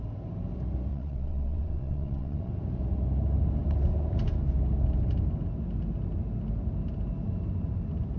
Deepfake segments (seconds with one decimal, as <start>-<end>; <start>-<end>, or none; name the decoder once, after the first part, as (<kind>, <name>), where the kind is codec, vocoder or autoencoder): 0.9-2.5 (vocoder, WaveNeXt)